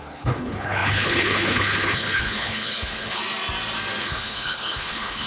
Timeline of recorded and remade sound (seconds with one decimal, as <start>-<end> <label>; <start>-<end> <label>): 0.0-3.2 remade; 3.2-4.0 recorded; 4.0-5.3 remade

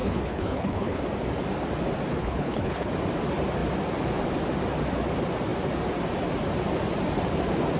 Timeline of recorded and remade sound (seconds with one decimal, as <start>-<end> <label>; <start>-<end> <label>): 0.0-1.0 remade; 1.0-2.2 recorded; 2.2-2.9 remade; 2.9-7.8 recorded

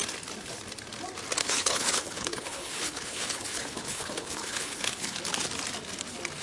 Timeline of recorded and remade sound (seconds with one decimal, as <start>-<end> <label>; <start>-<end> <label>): 0.0-1.4 recorded; 1.4-5.2 remade; 5.2-6.4 recorded

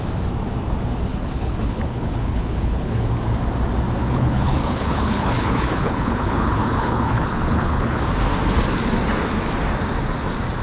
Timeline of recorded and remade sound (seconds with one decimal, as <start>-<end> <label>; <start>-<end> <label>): 0.0-1.1 recorded; 1.1-3.1 remade; 3.1-4.0 recorded; 4.0-8.0 remade; 8.0-10.6 recorded

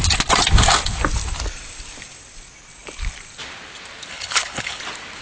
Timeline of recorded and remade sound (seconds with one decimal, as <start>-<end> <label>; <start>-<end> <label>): 0.0-4.1 recorded; 4.1-4.8 remade; 4.8-5.2 recorded

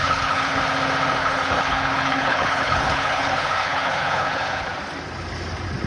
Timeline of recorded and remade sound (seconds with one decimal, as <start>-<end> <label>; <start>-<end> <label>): 0.0-0.6 remade; 0.6-1.2 recorded; 1.2-4.7 remade; 4.7-5.9 recorded